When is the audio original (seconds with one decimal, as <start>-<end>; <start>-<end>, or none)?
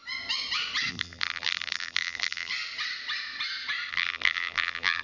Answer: 0.0-0.9; 2.5-3.9